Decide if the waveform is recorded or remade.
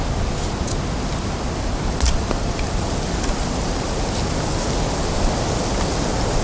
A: recorded